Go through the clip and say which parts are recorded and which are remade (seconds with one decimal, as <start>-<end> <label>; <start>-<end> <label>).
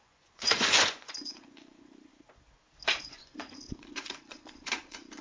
0.0-2.1 remade; 2.1-3.0 recorded; 3.0-5.2 remade